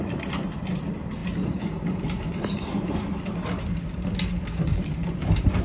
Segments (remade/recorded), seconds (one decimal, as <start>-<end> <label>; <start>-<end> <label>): 0.0-1.2 recorded; 1.2-2.9 remade; 2.9-4.7 recorded; 4.7-5.6 remade